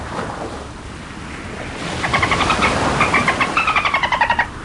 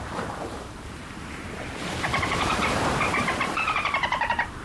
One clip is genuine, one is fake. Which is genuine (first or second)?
first